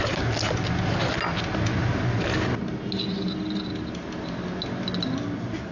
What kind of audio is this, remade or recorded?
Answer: recorded